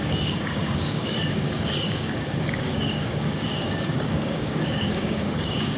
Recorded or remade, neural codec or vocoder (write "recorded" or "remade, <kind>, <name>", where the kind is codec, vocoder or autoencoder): remade, codec, DAC